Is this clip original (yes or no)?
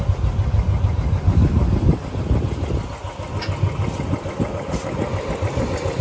yes